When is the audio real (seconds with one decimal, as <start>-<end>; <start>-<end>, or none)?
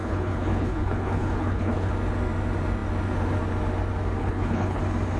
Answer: 1.9-4.2; 4.8-5.2